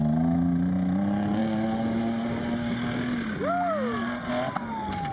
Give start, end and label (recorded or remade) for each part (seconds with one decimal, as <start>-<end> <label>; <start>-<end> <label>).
0.0-5.1 recorded